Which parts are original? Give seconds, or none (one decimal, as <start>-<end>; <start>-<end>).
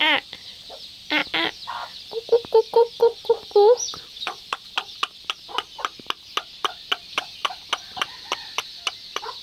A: 0.0-9.4